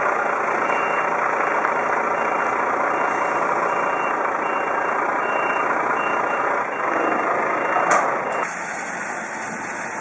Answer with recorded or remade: recorded